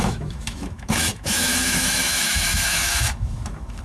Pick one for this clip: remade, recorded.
remade